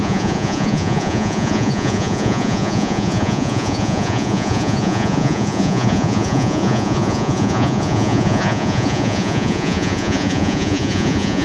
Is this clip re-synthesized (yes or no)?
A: yes